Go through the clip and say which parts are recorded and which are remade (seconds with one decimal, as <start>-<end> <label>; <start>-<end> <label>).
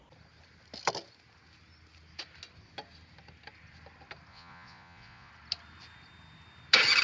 0.0-4.3 recorded; 4.3-5.3 remade; 5.3-7.0 recorded